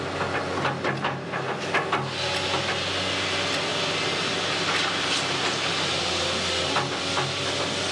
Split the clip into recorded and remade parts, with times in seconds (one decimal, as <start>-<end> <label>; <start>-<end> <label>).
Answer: 0.0-7.9 recorded